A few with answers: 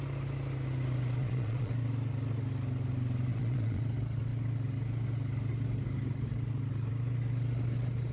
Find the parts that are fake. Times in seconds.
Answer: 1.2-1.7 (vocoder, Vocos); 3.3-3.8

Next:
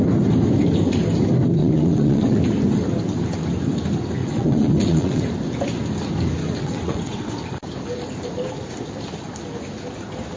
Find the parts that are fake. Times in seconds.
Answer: 1.6-2.4 (vocoder, WaveNeXt); 4.2-5.2; 6.4-7.3